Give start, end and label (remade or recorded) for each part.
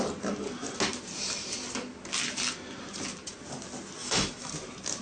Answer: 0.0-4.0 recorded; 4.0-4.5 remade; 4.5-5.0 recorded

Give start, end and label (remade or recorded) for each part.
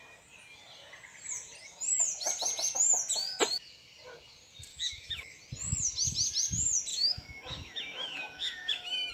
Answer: 0.0-4.7 recorded; 4.7-5.4 remade; 5.4-6.9 recorded; 6.9-9.1 remade